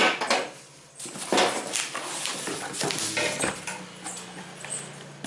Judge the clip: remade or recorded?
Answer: recorded